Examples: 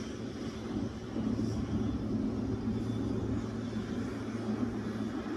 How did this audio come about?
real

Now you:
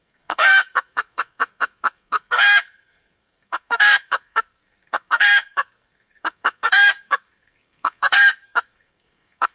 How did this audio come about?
fake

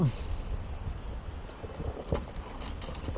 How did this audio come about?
real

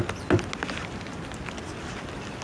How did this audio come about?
real